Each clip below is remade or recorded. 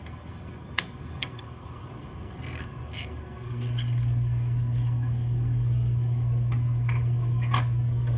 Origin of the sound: remade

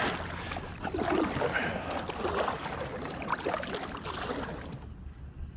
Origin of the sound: recorded